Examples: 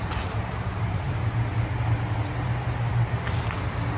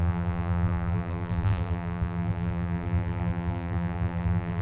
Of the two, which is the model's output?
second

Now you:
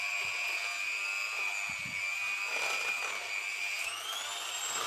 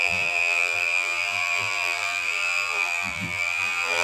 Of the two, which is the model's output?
second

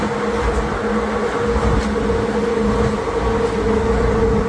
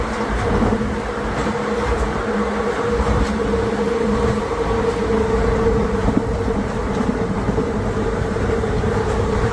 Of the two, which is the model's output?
second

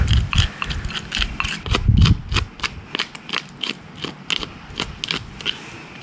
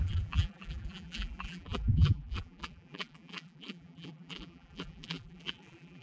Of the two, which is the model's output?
second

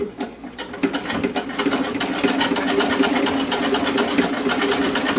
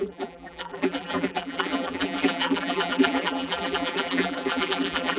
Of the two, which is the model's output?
second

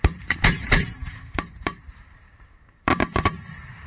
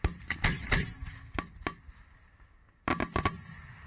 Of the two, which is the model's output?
first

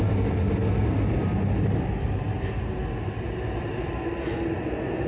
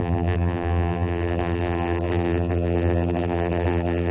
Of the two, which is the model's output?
second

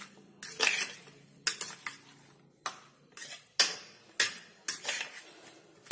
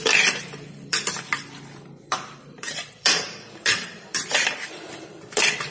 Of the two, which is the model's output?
second